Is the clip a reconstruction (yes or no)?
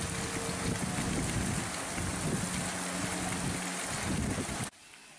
no